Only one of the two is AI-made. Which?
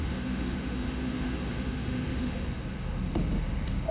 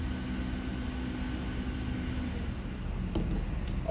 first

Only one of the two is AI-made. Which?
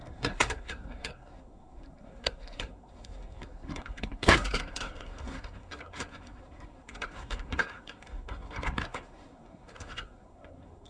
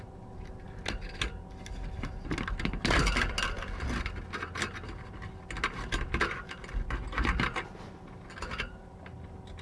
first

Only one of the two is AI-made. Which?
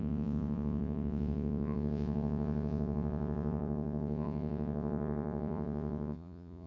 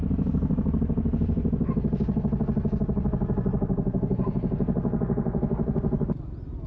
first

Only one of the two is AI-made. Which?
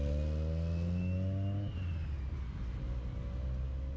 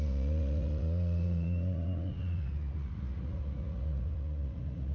second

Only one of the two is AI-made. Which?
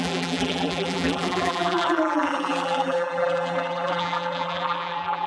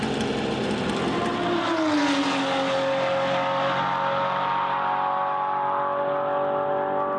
first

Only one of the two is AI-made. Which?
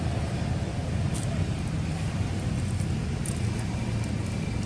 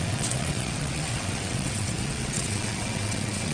second